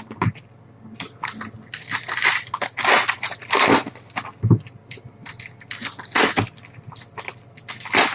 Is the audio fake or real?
real